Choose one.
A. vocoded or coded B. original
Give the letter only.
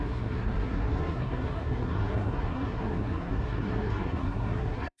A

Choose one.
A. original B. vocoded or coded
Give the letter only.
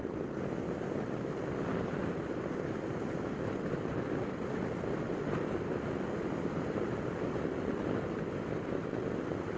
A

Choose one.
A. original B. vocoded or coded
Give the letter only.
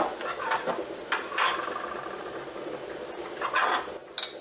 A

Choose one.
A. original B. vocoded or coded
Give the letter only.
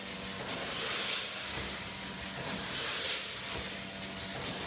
A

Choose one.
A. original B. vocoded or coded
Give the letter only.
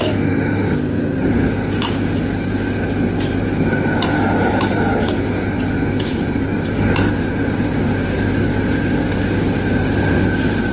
A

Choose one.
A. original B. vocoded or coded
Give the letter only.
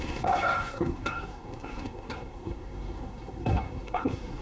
B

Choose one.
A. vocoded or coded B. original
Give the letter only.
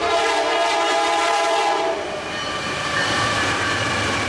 A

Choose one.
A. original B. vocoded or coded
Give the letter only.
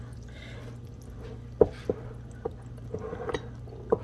A